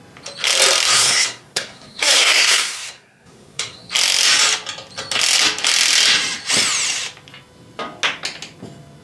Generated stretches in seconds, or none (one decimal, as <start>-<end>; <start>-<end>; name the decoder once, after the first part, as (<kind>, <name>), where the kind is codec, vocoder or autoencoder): 0.9-3.9 (codec, SNAC)